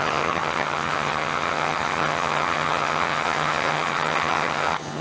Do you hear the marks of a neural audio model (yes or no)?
yes